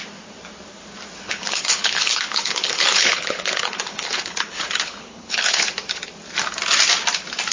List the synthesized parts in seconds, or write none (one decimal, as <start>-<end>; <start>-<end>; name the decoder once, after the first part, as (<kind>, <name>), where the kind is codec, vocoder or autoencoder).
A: 1.2-5.7 (codec, HILCodec)